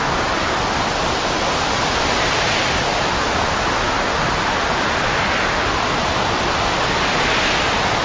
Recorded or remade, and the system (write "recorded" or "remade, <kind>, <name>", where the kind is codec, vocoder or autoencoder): recorded